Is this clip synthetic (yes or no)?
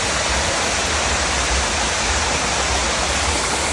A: no